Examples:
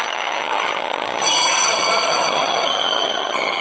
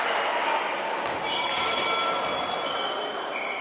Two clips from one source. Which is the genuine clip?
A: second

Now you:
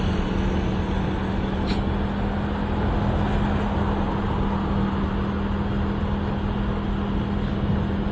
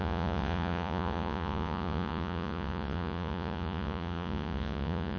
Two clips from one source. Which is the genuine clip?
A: first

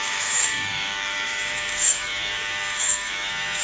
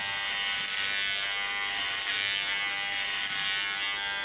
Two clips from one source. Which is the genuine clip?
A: second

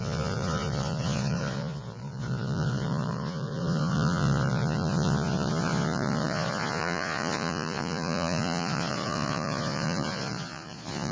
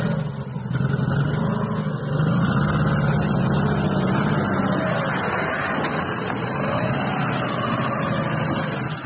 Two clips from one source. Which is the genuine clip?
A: second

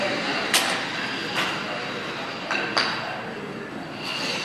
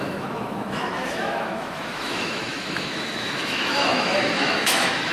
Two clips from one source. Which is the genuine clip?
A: first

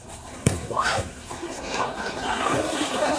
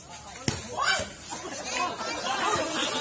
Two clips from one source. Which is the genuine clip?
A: second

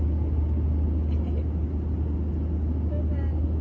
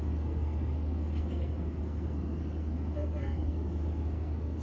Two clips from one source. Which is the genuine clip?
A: first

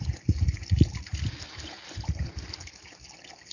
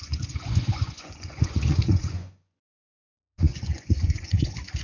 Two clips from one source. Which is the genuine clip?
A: first